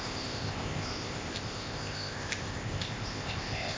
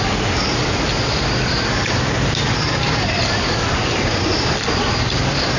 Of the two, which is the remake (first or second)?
first